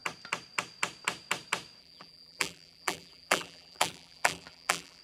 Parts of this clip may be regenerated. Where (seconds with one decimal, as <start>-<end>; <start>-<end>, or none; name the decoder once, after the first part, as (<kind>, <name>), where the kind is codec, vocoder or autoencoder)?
1.8-5.0 (vocoder, BigVGAN v2)